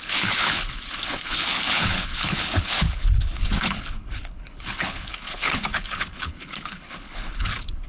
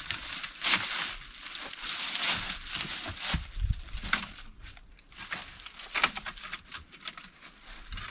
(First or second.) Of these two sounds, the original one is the second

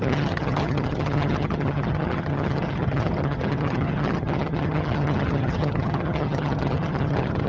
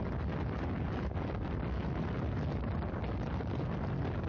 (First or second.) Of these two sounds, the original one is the second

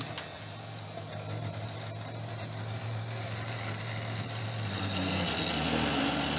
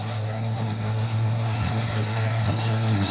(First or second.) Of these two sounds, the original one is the first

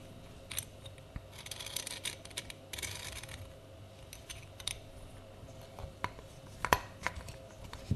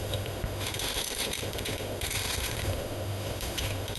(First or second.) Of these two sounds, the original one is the first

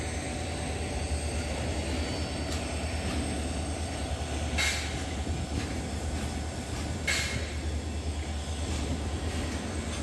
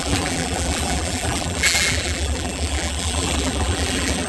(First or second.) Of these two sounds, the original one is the first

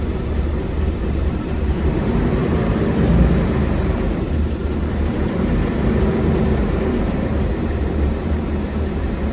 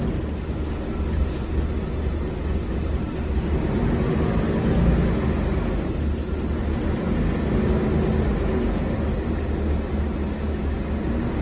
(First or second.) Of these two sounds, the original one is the second